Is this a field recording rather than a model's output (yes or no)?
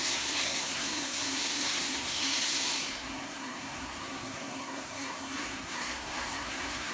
no